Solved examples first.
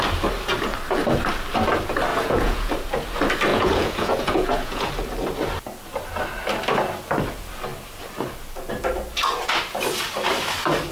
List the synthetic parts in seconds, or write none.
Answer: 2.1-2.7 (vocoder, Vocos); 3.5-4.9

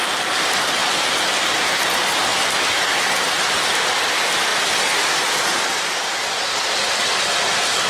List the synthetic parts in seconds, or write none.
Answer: 0.8-1.7 (vocoder, BigVGAN v2); 4.5-5.1; 5.5-7.0

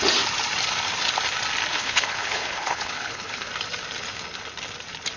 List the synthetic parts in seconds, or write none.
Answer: 1.7-3.5 (codec, HILCodec)

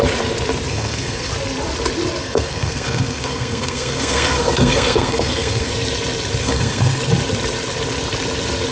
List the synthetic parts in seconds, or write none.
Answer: 0.7-1.3 (codec, SNAC); 2.2-5.7; 6.4-7.0

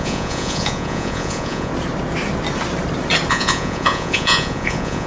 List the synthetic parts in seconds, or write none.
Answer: 0.0-1.7 (vocoder, Vocos); 3.3-5.1